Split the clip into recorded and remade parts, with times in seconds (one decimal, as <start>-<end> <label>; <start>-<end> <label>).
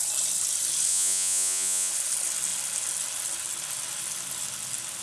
0.0-0.9 recorded; 0.9-1.9 remade; 1.9-5.0 recorded